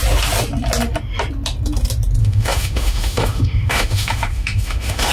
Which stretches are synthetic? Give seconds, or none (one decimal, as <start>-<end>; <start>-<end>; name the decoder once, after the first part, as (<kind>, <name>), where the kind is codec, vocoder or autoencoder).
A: 2.2-5.1 (autoencoder, DAC-VAE)